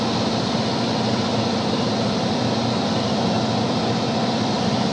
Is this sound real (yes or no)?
no